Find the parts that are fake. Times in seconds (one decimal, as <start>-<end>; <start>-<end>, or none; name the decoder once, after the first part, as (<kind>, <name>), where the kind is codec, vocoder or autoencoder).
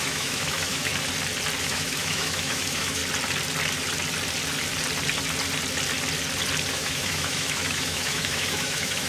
0.0-0.9 (autoencoder, DAC-VAE); 1.6-3.0; 6.7-9.1